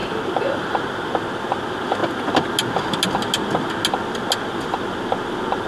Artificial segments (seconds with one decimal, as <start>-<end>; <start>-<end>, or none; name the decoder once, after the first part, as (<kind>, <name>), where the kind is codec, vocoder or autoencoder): none